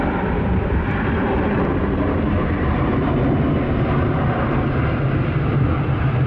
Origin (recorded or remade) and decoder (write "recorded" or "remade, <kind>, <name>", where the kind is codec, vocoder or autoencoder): remade, vocoder, BigVGAN v2